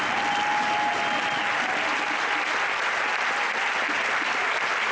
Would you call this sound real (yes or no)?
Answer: yes